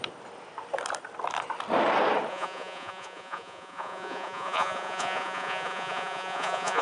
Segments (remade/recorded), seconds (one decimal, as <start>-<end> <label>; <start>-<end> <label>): 0.0-2.3 recorded; 2.3-6.8 remade